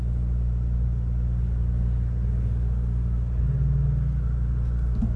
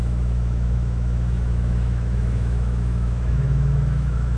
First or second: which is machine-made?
second